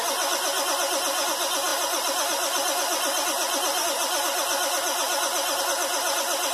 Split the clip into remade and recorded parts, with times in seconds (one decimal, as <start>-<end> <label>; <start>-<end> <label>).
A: 0.0-6.5 recorded